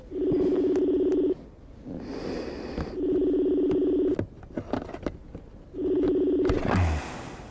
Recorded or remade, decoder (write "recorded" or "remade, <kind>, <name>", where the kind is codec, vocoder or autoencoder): recorded